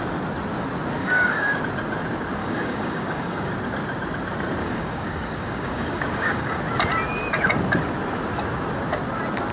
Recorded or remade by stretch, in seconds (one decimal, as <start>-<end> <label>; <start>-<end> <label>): 0.0-1.0 recorded; 1.0-1.6 remade; 1.6-2.4 recorded; 2.4-3.5 remade; 3.5-4.6 recorded; 4.6-6.6 remade; 6.6-9.5 recorded